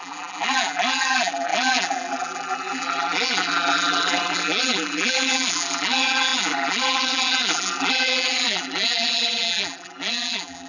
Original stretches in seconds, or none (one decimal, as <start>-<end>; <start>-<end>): none